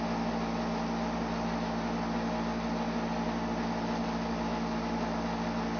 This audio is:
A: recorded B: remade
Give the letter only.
A